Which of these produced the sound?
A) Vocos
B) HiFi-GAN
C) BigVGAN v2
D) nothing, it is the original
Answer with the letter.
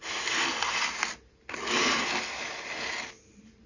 D